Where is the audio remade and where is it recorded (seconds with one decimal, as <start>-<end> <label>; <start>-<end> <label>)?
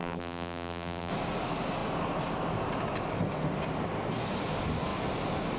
0.0-1.1 remade; 1.1-5.6 recorded